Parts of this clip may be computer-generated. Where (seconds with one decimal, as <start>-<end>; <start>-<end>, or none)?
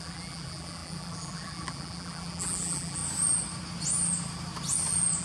0.0-3.0